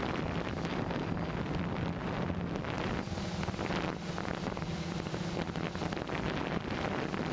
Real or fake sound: fake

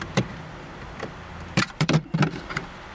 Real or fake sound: fake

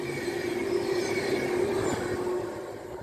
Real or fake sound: real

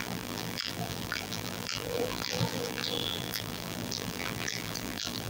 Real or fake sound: fake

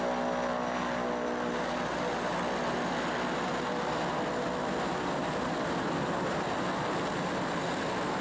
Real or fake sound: real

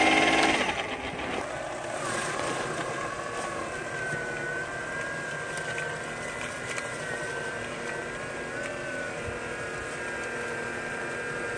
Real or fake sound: real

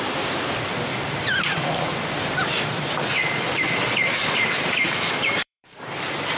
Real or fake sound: fake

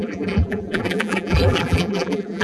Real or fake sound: fake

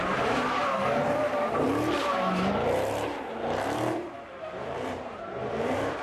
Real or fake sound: fake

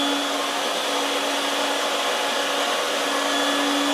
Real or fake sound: real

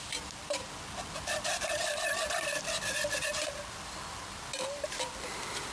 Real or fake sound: fake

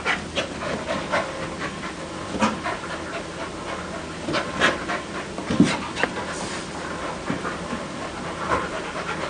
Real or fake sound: real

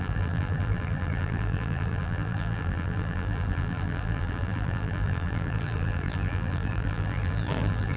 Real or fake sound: fake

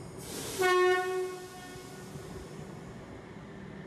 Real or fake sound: real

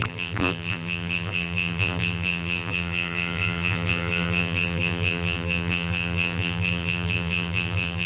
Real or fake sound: fake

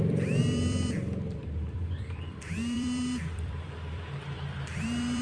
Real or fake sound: fake